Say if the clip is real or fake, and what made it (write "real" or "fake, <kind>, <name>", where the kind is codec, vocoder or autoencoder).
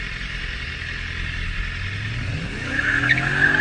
real